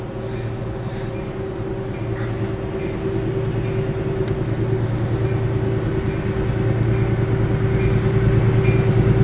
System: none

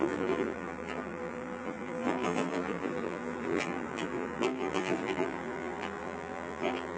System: vocoder, BigVGAN v2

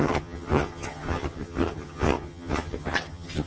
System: vocoder, HiFi-GAN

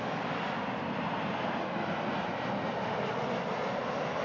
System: none